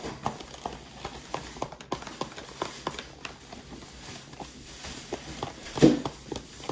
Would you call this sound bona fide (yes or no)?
yes